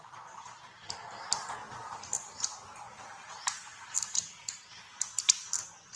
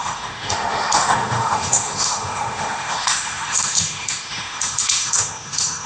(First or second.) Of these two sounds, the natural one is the first